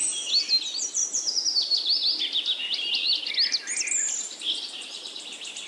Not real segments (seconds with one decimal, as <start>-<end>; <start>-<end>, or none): none